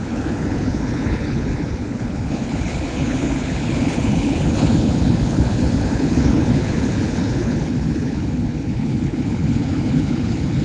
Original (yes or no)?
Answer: no